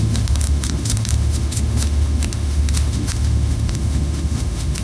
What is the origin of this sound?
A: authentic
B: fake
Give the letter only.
B